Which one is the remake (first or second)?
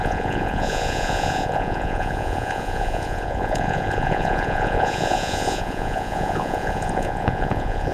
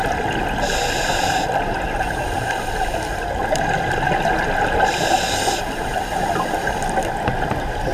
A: first